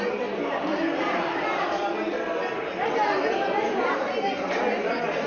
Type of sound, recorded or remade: recorded